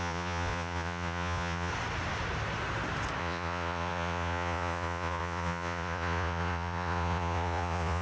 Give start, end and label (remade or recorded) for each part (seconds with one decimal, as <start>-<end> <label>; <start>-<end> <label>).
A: 0.0-1.7 remade; 1.7-3.2 recorded; 3.2-8.0 remade